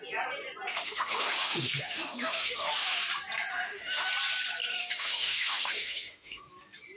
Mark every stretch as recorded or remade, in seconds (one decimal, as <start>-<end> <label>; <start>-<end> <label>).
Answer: 0.0-0.7 recorded; 0.7-3.0 remade; 3.0-3.5 recorded; 3.5-4.1 remade; 4.1-4.7 recorded; 4.7-6.4 remade; 6.4-7.0 recorded